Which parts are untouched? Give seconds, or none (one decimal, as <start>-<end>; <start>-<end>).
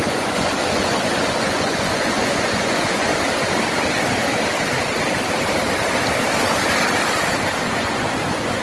3.1-7.6